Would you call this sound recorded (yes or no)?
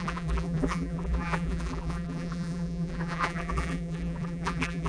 no